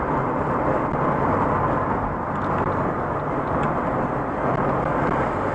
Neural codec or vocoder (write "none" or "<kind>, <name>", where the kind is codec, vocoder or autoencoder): none